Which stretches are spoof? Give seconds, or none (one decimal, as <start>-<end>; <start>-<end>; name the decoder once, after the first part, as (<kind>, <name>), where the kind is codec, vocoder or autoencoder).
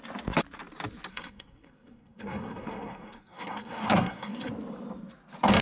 1.1-4.5 (codec, SNAC)